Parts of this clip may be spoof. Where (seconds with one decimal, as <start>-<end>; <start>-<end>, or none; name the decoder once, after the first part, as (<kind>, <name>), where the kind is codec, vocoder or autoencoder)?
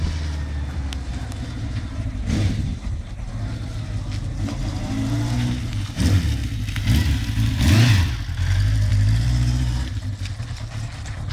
1.1-3.1 (vocoder, BigVGAN v2); 4.6-6.0; 8.9-9.9